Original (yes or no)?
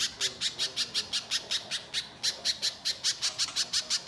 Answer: yes